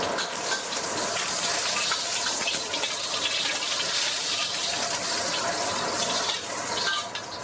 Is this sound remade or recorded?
recorded